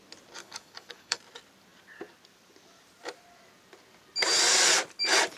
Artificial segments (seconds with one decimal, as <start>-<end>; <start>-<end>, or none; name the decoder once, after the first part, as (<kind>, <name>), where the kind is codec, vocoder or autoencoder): 0.4-1.2 (codec, DAC)